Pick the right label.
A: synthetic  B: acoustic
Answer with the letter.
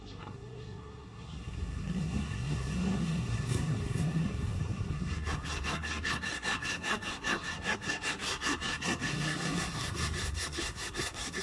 A